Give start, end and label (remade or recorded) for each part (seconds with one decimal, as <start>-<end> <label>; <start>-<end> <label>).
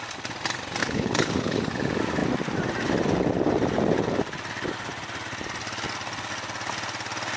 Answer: 0.0-0.8 recorded; 0.8-1.7 remade; 1.7-7.4 recorded